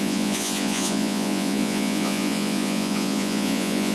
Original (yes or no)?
no